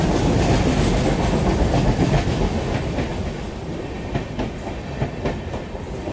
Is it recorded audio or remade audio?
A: recorded